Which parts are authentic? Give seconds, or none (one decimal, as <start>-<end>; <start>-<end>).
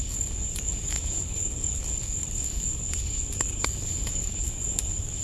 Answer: none